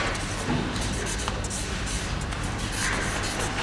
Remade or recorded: recorded